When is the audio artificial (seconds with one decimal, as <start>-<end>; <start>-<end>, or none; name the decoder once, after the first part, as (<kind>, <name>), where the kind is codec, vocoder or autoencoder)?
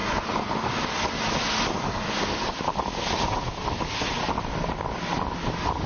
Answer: none